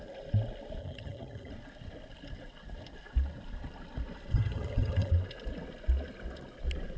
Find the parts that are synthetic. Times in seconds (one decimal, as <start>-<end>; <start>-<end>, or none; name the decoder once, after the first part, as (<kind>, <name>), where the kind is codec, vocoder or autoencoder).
0.8-1.5 (vocoder, HiFi-GAN); 4.3-5.1